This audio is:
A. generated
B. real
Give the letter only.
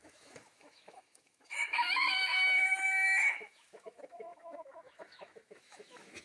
A